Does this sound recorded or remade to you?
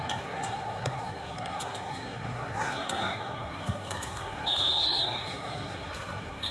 remade